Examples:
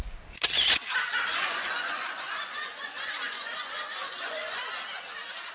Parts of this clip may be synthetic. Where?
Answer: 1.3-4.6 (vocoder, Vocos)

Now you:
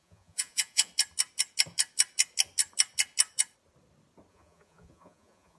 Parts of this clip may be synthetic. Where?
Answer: 0.0-0.9 (vocoder, Vocos); 4.3-5.6

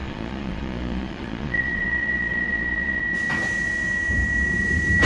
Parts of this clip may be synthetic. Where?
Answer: 0.0-3.0 (vocoder, Vocos)

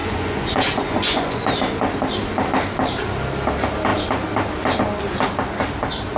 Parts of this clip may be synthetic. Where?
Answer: 0.0-1.5 (vocoder, Vocos)

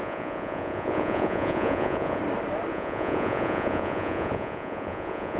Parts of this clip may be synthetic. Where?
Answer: 0.0-2.2 (vocoder, Vocos); 2.7-5.4

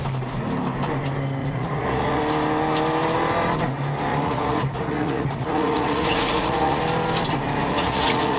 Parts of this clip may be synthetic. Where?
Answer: 1.4-2.2 (vocoder, Vocos); 4.1-6.8; 7.6-8.4